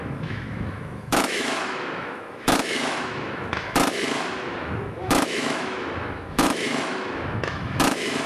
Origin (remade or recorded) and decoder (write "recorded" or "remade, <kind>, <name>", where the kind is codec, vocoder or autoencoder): remade, autoencoder, DAC-VAE